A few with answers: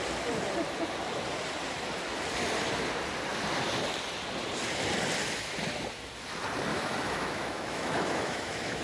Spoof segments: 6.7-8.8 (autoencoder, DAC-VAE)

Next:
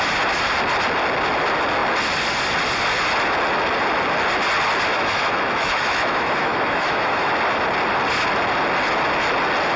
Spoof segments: 4.9-7.3 (autoencoder, DAC-VAE)

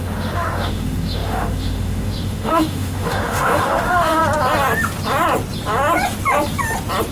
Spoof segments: 0.0-4.2 (autoencoder, DAC-VAE)

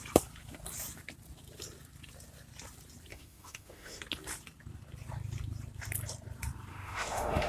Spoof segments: 3.1-4.0 (autoencoder, DAC-VAE); 6.7-7.5

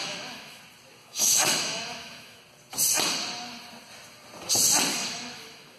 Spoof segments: 0.0-0.6 (autoencoder, DAC-VAE); 1.0-2.4; 4.9-5.8

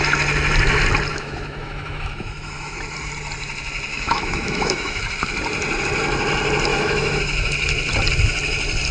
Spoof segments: 1.1-2.8 (autoencoder, DAC-VAE); 3.9-5.0; 6.7-7.2

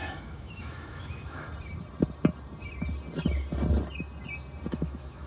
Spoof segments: 0.0-1.5 (autoencoder, DAC-VAE); 4.7-5.3